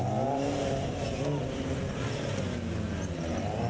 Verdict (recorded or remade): recorded